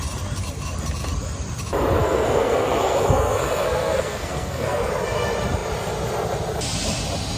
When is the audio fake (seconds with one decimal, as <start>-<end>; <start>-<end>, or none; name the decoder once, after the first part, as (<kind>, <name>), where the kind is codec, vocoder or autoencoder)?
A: 2.0-4.9 (codec, SNAC)